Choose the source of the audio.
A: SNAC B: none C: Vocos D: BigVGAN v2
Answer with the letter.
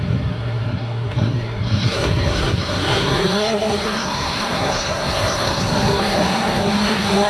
A